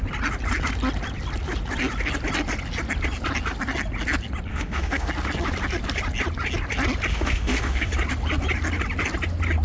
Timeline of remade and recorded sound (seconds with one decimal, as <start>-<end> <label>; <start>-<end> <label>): 0.0-4.5 recorded; 4.5-5.1 remade; 5.1-7.1 recorded; 7.1-7.9 remade; 7.9-9.6 recorded